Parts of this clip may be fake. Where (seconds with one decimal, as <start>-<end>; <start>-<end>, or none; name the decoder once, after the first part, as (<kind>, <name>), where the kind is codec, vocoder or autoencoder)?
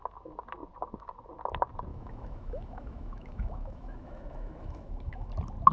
1.9-5.3 (autoencoder, DAC-VAE)